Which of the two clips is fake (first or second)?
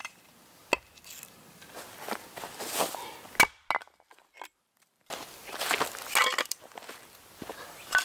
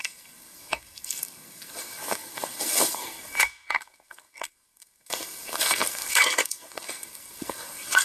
second